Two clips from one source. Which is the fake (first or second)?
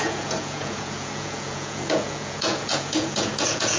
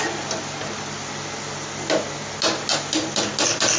first